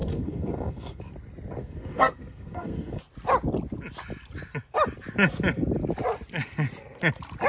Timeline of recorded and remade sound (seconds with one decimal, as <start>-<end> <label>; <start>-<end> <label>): 0.0-1.0 remade; 1.0-1.6 recorded; 1.6-3.0 remade; 3.0-7.5 recorded